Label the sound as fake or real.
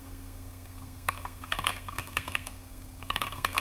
fake